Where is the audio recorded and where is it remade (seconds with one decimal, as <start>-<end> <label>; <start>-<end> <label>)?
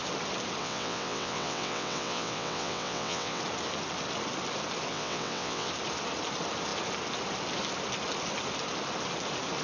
0.0-0.6 recorded; 0.6-3.4 remade; 3.4-4.9 recorded; 4.9-5.7 remade; 5.7-9.6 recorded